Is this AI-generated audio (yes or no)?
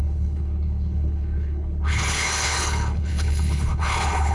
yes